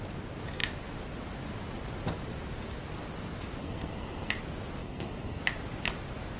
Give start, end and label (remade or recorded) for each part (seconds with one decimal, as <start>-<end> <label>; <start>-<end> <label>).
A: 0.0-3.6 recorded; 3.6-4.3 remade; 4.3-4.8 recorded; 4.8-5.4 remade; 5.4-6.4 recorded